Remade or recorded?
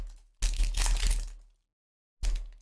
recorded